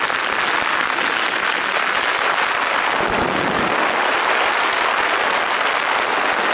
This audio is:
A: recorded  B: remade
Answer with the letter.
A